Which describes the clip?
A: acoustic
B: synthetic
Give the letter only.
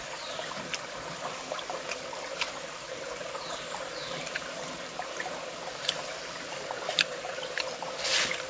A